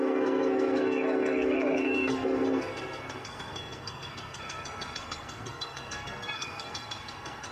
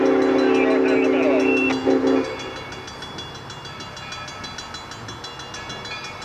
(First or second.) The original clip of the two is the second